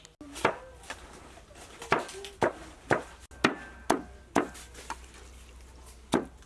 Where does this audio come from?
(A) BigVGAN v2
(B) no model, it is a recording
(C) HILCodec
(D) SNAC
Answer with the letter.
B